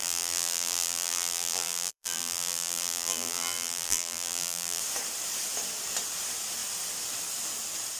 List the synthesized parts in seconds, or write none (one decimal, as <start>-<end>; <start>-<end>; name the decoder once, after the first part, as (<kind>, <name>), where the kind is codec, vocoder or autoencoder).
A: 0.0-4.8 (vocoder, BigVGAN v2)